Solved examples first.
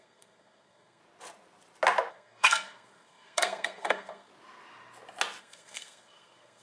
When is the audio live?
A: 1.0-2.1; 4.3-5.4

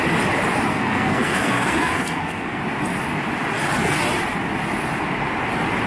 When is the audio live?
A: 0.0-0.7; 2.6-5.9

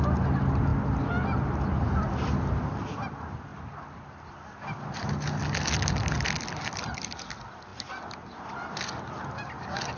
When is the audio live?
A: 0.0-10.0

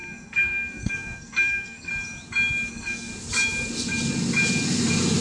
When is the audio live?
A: 1.9-2.7; 3.1-5.2

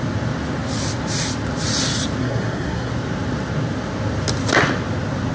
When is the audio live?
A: 0.0-2.2; 2.9-5.3